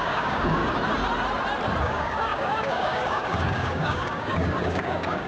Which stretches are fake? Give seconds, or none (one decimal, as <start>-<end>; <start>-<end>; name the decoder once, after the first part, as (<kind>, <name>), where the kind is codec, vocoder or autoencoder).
0.0-0.6 (codec, DAC); 1.8-5.3